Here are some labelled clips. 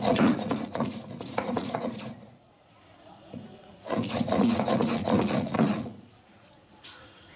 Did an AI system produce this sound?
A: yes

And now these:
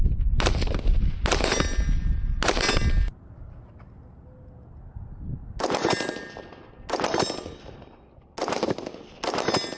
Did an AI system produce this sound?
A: no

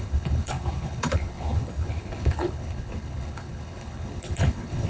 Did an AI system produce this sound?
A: yes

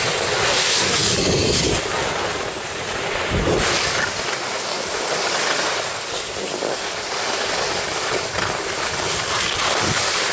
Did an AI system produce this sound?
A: no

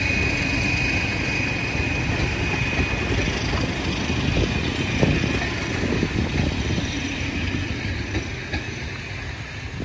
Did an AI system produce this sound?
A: no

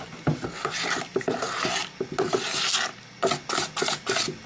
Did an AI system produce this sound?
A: no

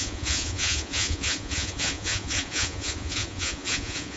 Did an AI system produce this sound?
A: yes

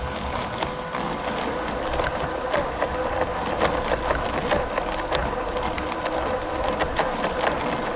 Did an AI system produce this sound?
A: no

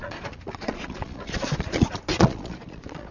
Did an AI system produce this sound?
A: yes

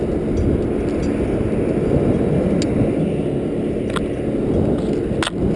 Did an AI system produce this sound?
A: no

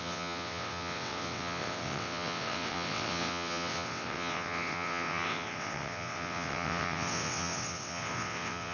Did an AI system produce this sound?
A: yes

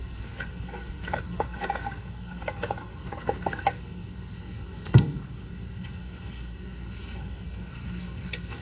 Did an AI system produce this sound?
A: yes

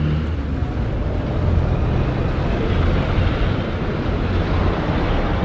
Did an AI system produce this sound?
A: no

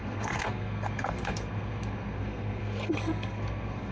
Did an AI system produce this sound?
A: yes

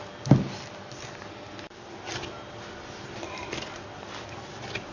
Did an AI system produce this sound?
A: no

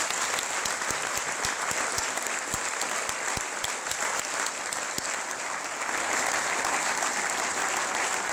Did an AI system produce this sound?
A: no